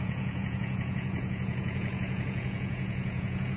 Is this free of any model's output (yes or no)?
no